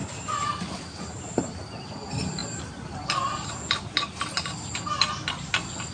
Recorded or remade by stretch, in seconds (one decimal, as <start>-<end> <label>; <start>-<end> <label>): 0.0-5.9 recorded